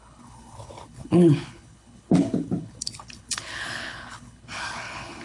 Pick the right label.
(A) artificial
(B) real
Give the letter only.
A